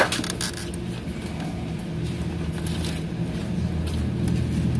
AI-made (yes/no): no